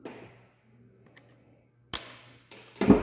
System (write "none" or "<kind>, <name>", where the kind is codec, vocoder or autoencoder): none